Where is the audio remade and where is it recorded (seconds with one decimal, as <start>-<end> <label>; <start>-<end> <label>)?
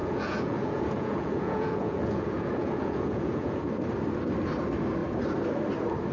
0.0-3.7 remade; 3.7-6.1 recorded